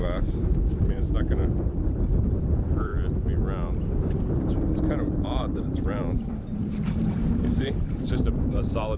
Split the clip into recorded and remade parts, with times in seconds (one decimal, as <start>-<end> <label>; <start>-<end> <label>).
0.0-2.9 remade; 2.9-3.9 recorded; 3.9-9.0 remade